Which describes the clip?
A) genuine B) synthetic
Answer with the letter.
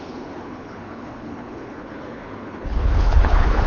B